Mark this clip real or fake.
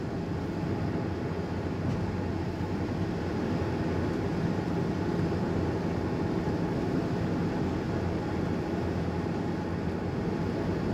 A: real